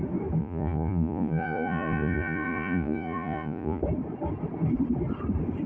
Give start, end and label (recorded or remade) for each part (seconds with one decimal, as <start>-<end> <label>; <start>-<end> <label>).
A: 0.0-0.4 recorded; 0.4-3.8 remade; 3.8-5.7 recorded